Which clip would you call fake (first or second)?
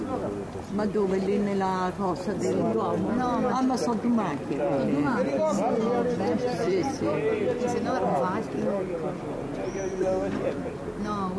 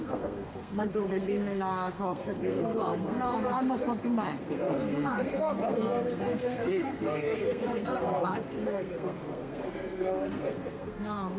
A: second